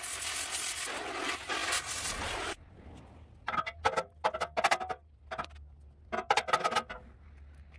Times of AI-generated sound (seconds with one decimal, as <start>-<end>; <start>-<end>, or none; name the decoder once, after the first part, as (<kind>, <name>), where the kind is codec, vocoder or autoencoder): none